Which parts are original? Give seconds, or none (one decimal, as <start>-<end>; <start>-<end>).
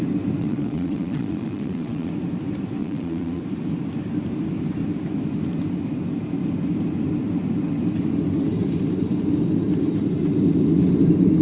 0.0-0.4; 2.1-2.8; 3.4-11.4